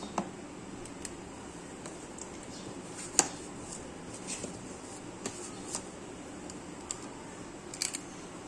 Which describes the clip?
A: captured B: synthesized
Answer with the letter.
A